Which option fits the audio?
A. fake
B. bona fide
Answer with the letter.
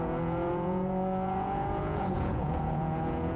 A